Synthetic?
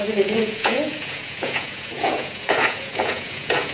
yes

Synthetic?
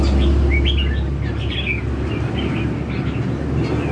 no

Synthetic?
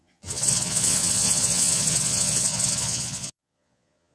yes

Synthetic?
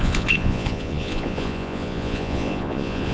yes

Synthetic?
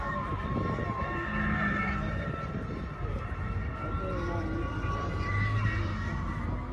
no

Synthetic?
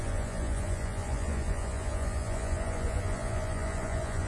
yes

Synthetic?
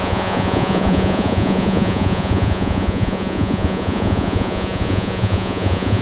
yes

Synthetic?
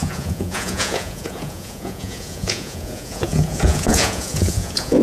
yes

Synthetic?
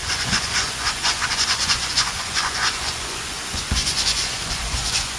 yes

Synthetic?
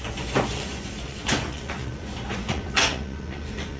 yes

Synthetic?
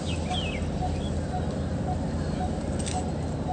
no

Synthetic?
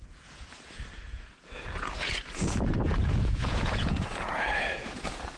yes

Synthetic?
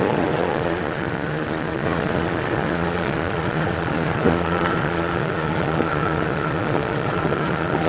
yes